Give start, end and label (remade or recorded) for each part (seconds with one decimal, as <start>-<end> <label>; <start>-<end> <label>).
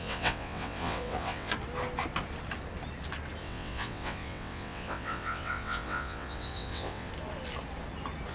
0.0-1.5 remade; 1.5-3.4 recorded; 3.4-7.1 remade; 7.1-8.3 recorded